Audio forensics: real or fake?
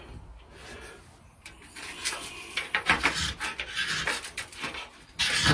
real